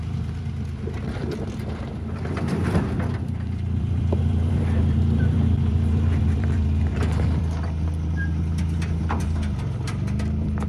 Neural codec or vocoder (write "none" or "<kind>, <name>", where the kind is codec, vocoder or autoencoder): vocoder, BigVGAN v2